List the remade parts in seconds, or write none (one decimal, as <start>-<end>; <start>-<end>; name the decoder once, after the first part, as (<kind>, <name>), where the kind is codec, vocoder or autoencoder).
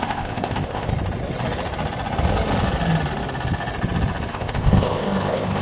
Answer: 0.0-0.9 (codec, ZipCodec); 4.3-5.6